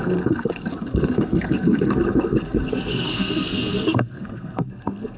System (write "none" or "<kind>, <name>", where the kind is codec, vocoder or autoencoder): codec, SNAC